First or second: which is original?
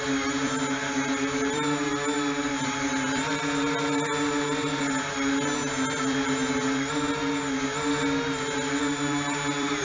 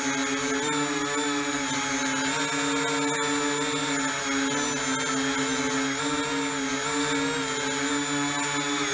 second